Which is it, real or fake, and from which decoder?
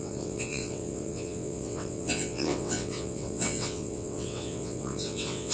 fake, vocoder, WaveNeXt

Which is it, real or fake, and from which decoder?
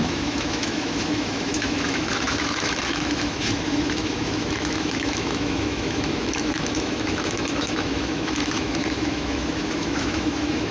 fake, autoencoder, DAC-VAE